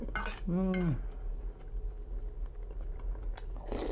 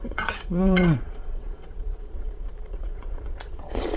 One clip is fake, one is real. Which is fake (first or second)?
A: second